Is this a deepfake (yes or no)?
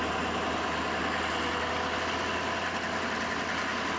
no